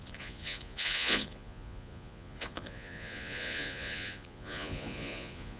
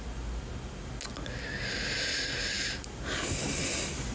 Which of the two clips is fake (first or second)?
first